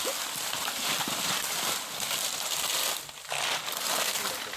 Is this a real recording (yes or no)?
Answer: no